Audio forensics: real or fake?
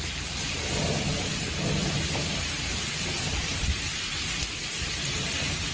fake